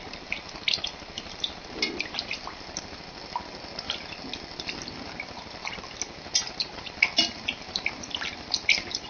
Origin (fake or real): real